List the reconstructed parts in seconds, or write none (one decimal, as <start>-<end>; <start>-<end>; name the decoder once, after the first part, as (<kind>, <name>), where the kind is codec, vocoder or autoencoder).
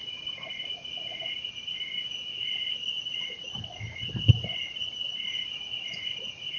0.0-1.3 (vocoder, Vocos); 5.3-6.6